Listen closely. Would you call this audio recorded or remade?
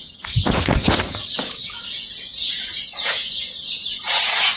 remade